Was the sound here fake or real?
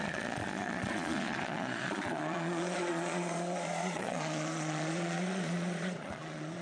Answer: fake